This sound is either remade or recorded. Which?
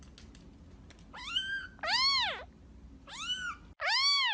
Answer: recorded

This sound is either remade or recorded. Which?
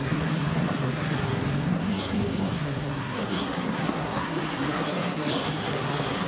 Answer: remade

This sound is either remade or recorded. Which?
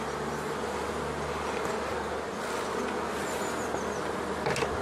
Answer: recorded